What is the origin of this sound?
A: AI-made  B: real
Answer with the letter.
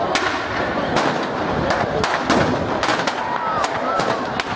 B